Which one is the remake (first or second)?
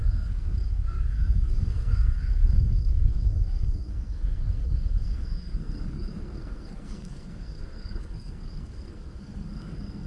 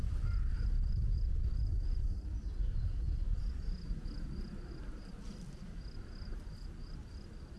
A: first